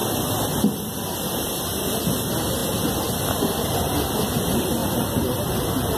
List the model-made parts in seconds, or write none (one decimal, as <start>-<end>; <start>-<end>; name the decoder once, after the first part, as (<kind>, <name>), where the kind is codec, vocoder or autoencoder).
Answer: 4.8-5.4 (vocoder, BigVGAN v2)